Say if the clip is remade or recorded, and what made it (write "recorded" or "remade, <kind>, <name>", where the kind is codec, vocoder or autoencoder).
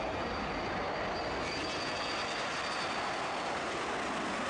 recorded